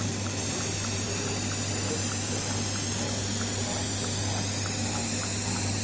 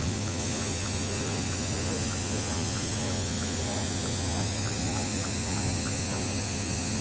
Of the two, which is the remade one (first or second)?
second